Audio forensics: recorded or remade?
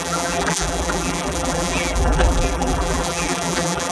remade